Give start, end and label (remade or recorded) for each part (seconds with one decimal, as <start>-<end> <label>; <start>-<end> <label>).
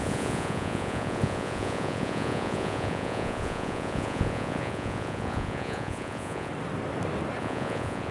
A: 0.0-6.5 remade; 6.5-7.4 recorded; 7.4-8.1 remade